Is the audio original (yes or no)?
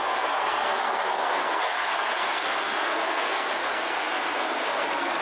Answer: no